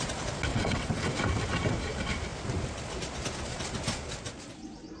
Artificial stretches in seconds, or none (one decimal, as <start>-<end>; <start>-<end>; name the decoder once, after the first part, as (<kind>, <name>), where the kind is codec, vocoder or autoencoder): 0.5-1.1 (vocoder, WaveNeXt)